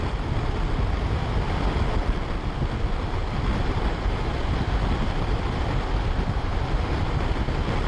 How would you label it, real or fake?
real